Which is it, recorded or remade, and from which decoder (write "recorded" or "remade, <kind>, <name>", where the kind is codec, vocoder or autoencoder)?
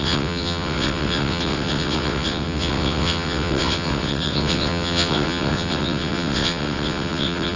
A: remade, vocoder, WaveNeXt